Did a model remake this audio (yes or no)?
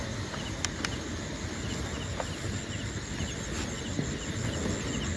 no